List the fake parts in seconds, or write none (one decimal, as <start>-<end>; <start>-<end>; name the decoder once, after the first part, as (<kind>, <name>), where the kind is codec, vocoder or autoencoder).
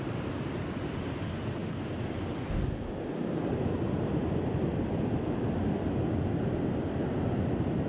none